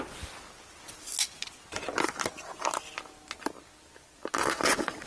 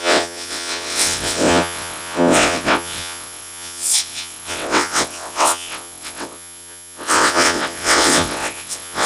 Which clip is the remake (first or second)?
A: second